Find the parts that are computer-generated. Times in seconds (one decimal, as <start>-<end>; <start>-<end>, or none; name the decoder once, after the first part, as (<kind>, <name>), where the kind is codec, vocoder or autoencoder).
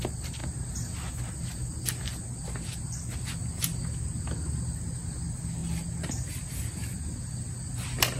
none